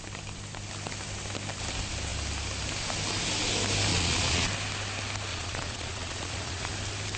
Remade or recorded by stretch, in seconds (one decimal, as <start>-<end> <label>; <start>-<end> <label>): 0.0-3.9 recorded; 3.9-4.5 remade; 4.5-5.3 recorded; 5.3-6.7 remade; 6.7-7.2 recorded

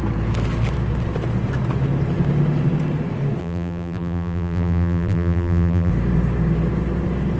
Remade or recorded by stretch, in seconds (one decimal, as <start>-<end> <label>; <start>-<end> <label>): 0.0-3.4 recorded; 3.4-5.9 remade; 5.9-7.4 recorded

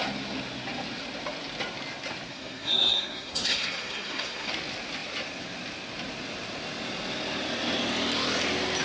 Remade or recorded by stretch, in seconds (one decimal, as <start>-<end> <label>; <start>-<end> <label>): 0.0-2.3 recorded; 2.3-4.5 remade; 4.5-8.8 recorded

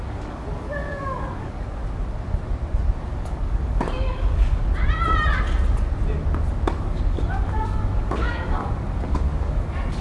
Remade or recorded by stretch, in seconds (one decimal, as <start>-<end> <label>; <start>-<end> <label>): 0.0-1.8 remade; 1.8-3.0 recorded; 3.0-4.6 remade; 4.6-6.8 recorded; 6.8-10.0 remade

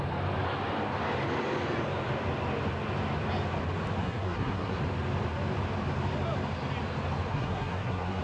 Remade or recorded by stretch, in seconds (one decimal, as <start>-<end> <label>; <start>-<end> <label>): 0.0-4.0 recorded; 4.0-4.8 remade; 4.8-7.3 recorded; 7.3-8.2 remade

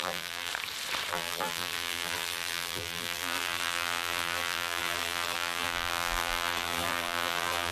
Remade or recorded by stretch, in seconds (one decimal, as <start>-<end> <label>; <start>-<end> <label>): 0.0-0.5 remade; 0.5-1.1 recorded; 1.1-7.7 remade

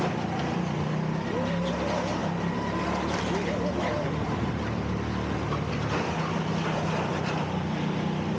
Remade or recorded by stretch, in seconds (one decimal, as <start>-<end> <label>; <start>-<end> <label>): 0.0-2.2 recorded; 2.2-4.5 remade; 4.5-8.4 recorded

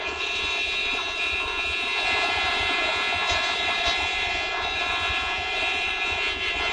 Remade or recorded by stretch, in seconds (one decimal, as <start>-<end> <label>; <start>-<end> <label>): 0.0-6.7 remade